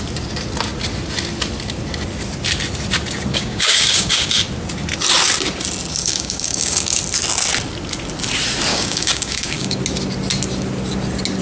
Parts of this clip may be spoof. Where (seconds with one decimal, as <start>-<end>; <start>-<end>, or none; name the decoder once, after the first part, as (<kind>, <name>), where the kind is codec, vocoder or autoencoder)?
3.3-4.4 (codec, DAC); 6.0-7.0; 8.7-9.8